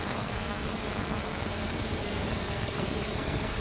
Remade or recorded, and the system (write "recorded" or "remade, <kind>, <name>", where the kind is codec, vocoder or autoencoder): remade, codec, SNAC